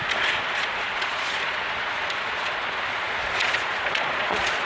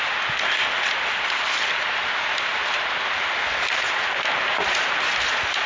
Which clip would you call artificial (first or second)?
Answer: first